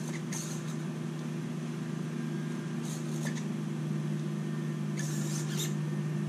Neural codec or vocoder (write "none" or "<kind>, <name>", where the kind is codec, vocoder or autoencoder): none